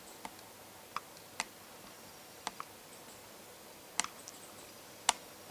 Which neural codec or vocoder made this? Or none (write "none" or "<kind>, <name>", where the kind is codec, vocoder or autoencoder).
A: none